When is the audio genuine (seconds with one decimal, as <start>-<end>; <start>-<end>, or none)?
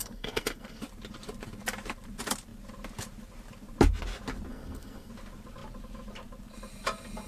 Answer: 0.8-4.5; 5.1-7.3